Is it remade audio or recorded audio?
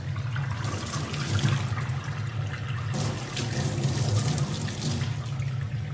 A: recorded